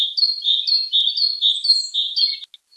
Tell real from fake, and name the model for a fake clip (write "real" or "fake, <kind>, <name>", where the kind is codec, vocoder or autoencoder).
real